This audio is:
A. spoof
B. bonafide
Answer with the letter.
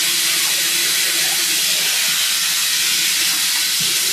B